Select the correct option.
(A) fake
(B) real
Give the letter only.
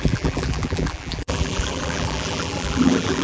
A